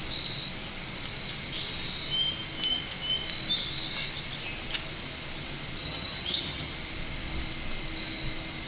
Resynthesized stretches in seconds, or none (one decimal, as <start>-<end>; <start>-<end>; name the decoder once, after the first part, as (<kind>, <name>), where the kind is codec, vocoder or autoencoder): 5.8-6.7 (vocoder, HiFi-GAN)